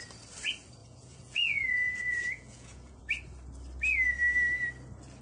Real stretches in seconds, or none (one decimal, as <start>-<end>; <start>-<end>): 0.0-0.8; 3.0-5.2